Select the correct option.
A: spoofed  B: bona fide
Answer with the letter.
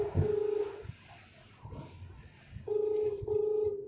B